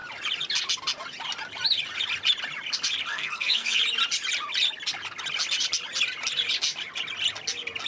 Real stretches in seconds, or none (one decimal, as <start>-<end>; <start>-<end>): 0.0-3.1; 3.8-7.9